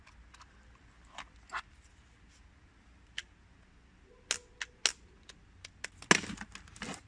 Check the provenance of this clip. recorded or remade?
recorded